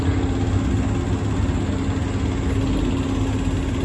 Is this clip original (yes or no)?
yes